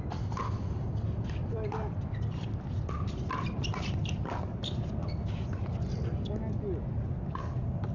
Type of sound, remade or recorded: recorded